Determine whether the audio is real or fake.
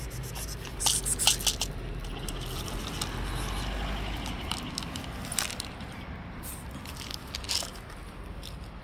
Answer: real